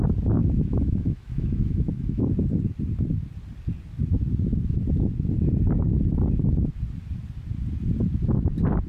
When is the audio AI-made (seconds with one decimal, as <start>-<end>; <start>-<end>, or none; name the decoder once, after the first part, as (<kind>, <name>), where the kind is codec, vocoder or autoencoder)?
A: 0.4-2.2 (autoencoder, DAC-VAE)